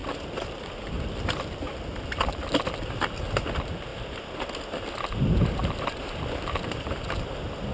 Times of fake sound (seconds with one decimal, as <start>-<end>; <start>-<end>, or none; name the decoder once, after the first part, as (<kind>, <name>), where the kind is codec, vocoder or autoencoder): 0.0-1.9 (vocoder, BigVGAN v2); 3.9-4.5; 5.6-7.3